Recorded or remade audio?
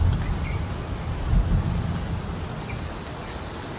recorded